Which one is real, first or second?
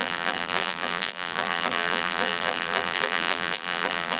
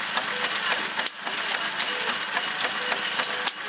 second